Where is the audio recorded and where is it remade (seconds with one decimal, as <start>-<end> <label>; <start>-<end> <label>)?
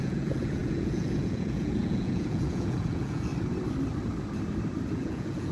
0.0-3.3 remade; 3.3-4.9 recorded; 4.9-5.5 remade